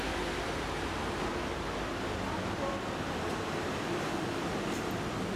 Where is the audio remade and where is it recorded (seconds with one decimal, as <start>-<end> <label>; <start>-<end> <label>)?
0.0-5.4 recorded